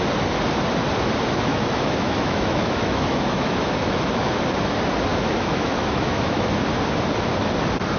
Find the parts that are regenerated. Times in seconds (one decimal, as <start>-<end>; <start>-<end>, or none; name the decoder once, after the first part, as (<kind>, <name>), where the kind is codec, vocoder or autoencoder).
1.5-4.4 (autoencoder, DAC-VAE); 5.1-6.5